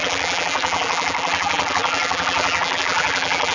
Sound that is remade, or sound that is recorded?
remade